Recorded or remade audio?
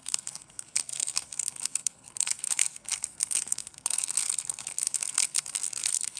remade